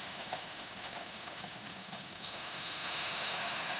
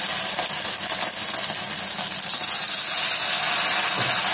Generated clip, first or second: first